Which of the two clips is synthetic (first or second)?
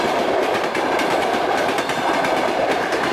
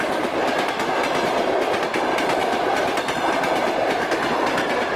first